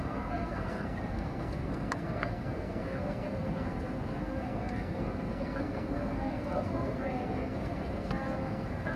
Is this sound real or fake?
fake